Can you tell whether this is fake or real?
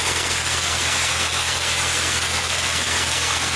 fake